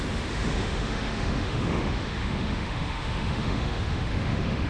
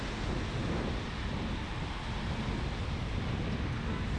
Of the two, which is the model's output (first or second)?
first